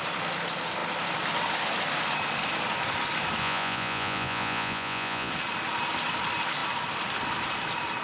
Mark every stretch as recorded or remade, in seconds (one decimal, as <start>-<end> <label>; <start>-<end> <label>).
0.0-3.4 recorded; 3.4-5.3 remade; 5.3-8.0 recorded